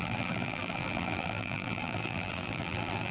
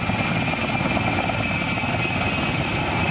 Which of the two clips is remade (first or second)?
first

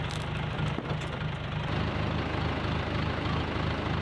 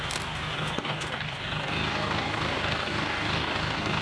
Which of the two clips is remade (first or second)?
second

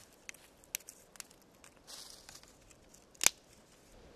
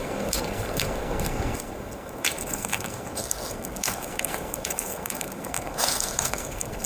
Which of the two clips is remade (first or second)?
second